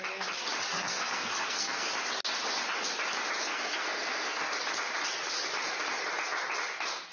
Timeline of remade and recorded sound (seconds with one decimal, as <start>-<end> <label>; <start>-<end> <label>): 0.0-0.7 recorded; 0.7-1.9 remade; 1.9-3.4 recorded; 3.4-4.4 remade; 4.4-7.1 recorded